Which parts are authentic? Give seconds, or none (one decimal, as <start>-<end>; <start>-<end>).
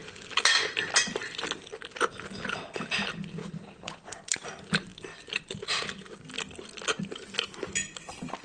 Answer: 0.0-3.4; 4.2-8.4